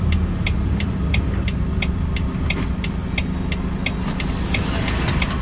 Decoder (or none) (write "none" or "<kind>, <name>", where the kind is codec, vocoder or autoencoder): none